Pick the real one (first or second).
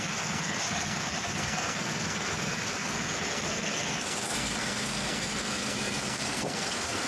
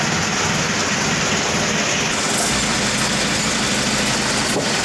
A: second